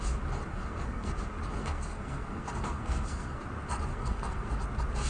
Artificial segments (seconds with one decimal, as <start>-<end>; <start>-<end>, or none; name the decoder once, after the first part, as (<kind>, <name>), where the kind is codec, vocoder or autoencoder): 0.5-1.1 (codec, SNAC); 1.6-3.4; 3.9-4.5